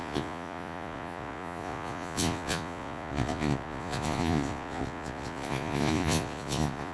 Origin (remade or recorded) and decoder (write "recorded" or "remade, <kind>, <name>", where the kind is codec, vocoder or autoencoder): remade, vocoder, Vocos